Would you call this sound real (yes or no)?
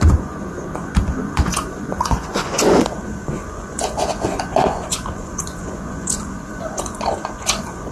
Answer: no